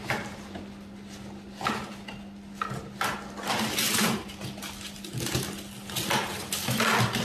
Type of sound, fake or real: real